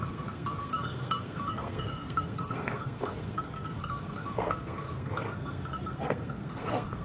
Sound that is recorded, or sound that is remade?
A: remade